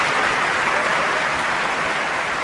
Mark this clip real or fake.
real